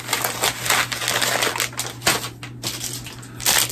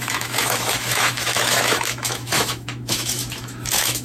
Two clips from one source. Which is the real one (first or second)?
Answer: first